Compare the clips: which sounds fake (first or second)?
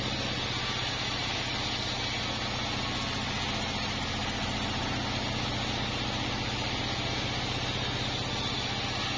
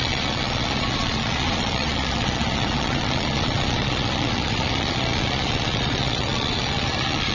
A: second